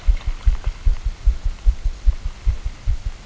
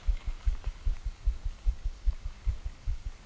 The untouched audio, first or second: first